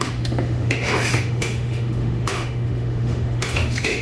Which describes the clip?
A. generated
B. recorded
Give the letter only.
A